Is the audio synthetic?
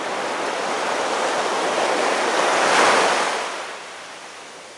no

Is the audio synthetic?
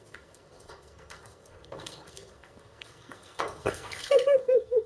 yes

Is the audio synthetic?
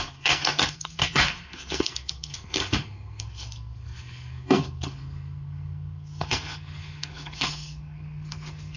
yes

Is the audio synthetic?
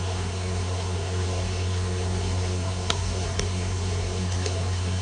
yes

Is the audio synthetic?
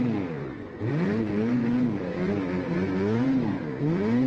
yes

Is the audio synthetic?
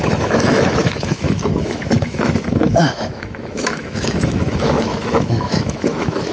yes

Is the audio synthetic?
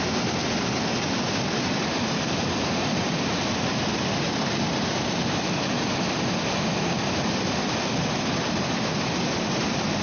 no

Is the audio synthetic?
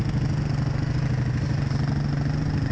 no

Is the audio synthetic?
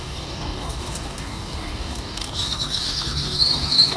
yes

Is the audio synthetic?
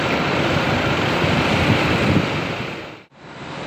yes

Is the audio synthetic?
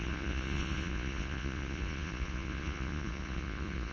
yes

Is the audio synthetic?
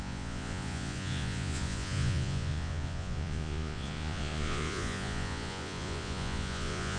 yes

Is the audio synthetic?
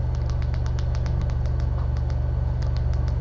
no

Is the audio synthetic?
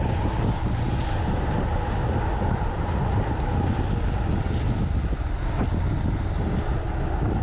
no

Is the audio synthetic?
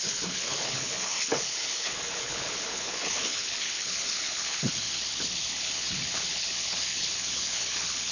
yes